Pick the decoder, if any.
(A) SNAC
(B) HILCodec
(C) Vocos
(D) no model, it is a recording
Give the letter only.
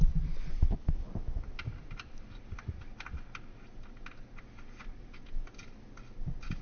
D